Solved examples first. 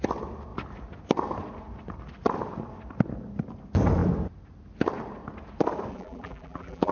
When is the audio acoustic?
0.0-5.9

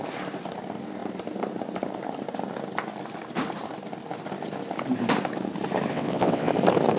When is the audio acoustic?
0.0-5.9; 6.5-7.0

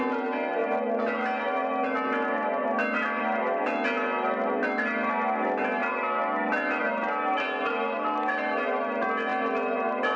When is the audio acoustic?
0.0-10.2